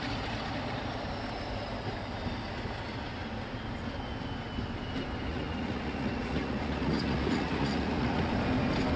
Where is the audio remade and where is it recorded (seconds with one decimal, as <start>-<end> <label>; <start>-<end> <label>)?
0.0-5.3 recorded; 5.3-8.3 remade; 8.3-9.0 recorded